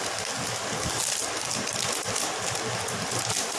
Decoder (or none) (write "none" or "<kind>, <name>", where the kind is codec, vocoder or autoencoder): none